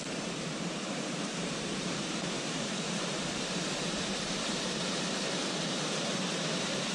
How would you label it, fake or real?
fake